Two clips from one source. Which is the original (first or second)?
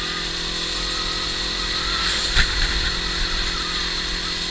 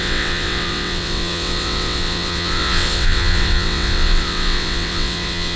first